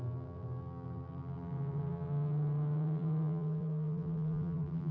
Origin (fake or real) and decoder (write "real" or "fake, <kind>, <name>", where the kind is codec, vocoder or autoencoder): fake, vocoder, BigVGAN v2